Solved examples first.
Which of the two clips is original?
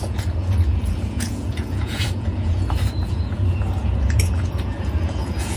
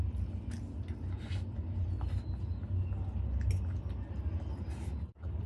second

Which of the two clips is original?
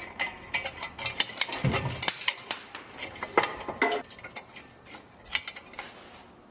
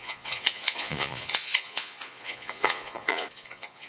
first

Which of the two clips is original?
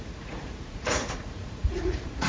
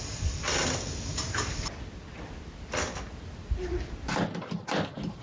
second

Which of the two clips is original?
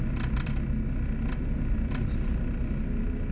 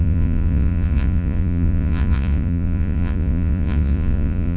first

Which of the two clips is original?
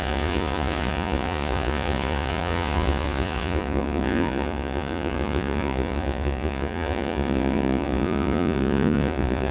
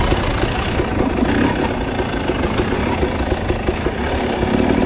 second